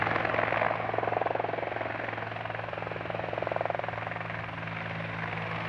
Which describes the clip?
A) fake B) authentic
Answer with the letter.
B